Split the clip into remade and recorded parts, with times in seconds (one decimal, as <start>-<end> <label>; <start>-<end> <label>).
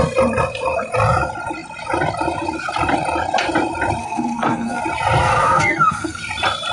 0.0-4.0 recorded; 4.0-4.8 remade; 4.8-5.2 recorded; 5.2-6.2 remade; 6.2-6.7 recorded